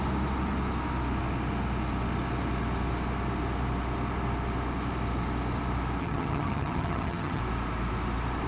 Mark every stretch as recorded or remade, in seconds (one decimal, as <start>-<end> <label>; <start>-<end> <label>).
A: 0.0-6.0 recorded; 6.0-7.4 remade; 7.4-8.5 recorded